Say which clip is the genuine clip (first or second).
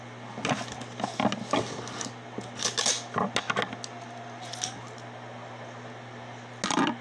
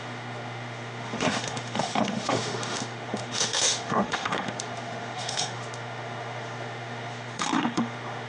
first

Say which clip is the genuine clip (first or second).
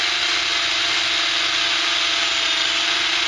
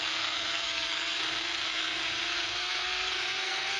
first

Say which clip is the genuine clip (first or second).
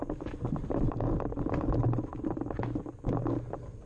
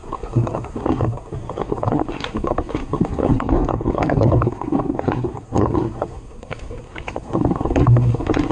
first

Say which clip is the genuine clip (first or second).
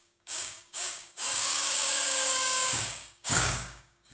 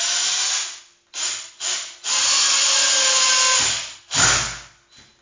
second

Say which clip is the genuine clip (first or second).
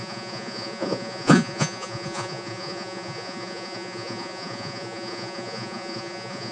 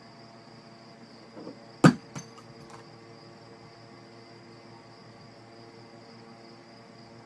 second